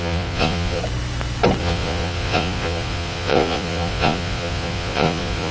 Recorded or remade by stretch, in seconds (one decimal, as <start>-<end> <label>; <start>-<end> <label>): 0.0-0.8 remade; 0.8-1.6 recorded; 1.6-5.5 remade